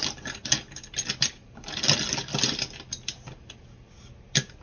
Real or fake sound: real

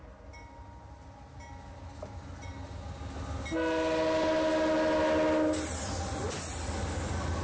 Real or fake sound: real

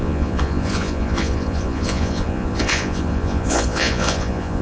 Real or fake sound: fake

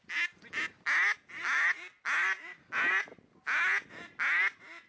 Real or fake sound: real